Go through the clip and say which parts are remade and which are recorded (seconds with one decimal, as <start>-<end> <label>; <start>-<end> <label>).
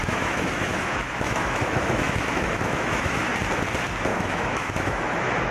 0.0-3.3 remade; 3.3-4.1 recorded; 4.1-5.5 remade